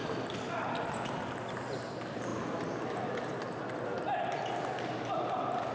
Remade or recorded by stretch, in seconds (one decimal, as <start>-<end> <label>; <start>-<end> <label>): 0.0-5.7 recorded